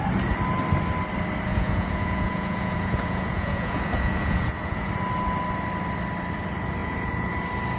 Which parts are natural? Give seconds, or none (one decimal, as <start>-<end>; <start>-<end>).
0.0-1.5; 4.9-6.8; 7.3-7.8